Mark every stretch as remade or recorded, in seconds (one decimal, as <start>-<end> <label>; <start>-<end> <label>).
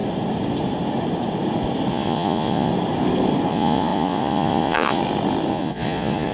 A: 0.0-1.9 recorded; 1.9-2.7 remade; 2.7-3.5 recorded; 3.5-5.0 remade; 5.0-5.5 recorded; 5.5-6.3 remade